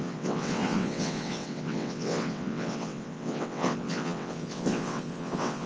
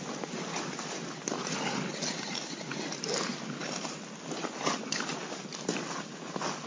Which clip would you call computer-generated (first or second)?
first